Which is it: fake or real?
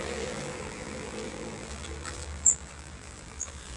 fake